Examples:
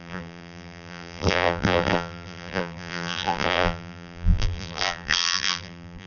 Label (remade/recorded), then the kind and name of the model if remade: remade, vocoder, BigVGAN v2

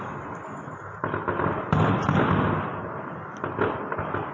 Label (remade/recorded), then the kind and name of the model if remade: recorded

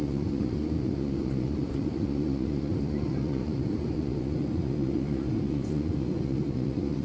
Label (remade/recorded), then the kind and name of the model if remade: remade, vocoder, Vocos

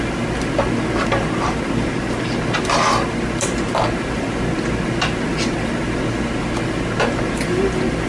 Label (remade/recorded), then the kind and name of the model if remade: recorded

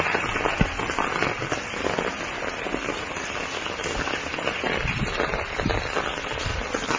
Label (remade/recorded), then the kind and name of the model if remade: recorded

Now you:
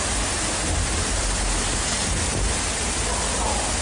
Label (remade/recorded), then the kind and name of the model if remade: recorded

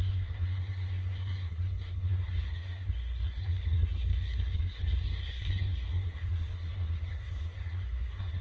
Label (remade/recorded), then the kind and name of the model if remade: remade, codec, SNAC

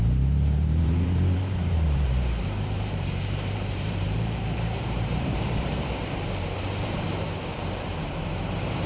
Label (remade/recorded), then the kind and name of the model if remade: remade, vocoder, BigVGAN v2